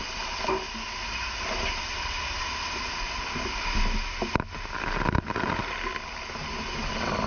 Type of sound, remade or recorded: recorded